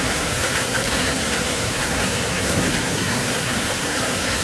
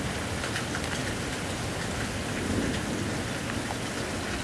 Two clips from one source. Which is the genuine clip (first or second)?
second